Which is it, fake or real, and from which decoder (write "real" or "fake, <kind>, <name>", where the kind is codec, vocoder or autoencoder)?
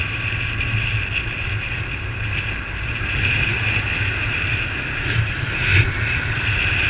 real